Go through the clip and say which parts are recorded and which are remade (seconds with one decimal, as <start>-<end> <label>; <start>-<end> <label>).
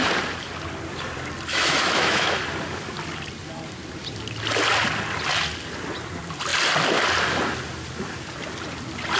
0.0-1.5 recorded; 1.5-2.4 remade; 2.4-9.2 recorded